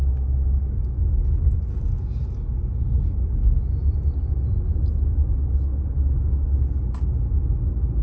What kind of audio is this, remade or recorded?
recorded